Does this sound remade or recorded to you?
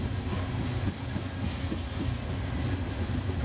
recorded